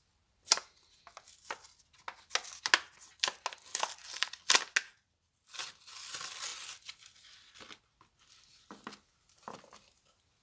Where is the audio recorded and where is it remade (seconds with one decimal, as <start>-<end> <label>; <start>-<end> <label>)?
0.0-10.4 recorded

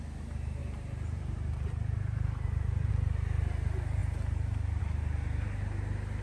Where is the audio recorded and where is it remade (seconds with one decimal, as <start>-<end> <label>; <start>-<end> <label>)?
0.0-0.6 recorded; 0.6-2.9 remade; 2.9-6.2 recorded

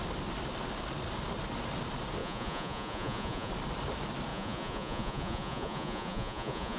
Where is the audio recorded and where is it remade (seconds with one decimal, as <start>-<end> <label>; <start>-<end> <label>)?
0.0-2.2 recorded; 2.2-3.5 remade; 3.5-4.3 recorded; 4.3-6.8 remade

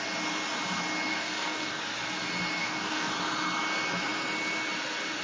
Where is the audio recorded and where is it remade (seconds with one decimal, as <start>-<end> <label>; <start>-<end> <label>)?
0.0-1.1 recorded; 1.1-1.8 remade; 1.8-2.6 recorded; 2.6-3.1 remade; 3.1-5.2 recorded

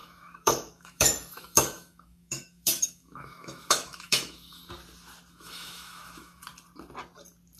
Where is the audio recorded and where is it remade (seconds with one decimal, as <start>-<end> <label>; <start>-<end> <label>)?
0.0-4.6 remade; 4.6-5.3 recorded; 5.3-6.4 remade; 6.4-7.6 recorded

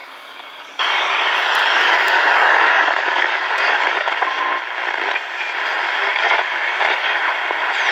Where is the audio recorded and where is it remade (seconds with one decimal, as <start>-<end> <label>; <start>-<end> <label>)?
0.0-1.1 remade; 1.1-1.6 recorded; 1.6-4.1 remade; 4.1-6.1 recorded; 6.1-7.2 remade; 7.2-7.9 recorded